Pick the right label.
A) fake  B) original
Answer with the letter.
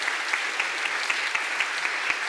B